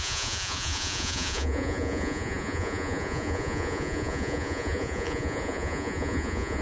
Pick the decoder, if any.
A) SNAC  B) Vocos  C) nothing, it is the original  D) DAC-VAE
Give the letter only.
B